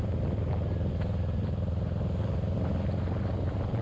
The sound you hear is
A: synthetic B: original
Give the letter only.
B